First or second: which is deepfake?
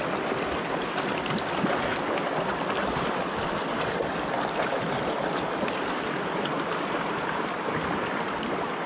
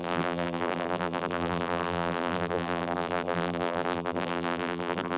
second